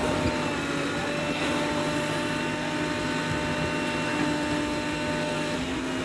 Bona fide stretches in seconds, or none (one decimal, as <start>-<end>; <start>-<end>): 0.0-6.0